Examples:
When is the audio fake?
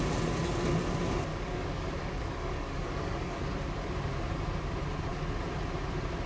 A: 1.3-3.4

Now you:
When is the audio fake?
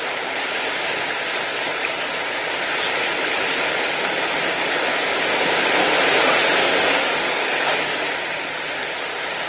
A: 6.6-8.0